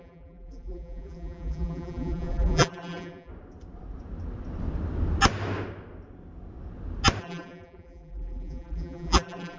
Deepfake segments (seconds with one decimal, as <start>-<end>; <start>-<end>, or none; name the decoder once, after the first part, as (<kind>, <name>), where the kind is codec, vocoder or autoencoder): 0.0-3.3 (vocoder, BigVGAN v2); 7.2-9.6